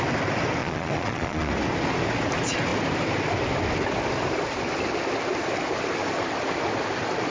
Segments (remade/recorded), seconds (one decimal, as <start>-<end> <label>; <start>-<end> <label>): 0.0-0.6 recorded; 0.6-1.5 remade; 1.5-7.3 recorded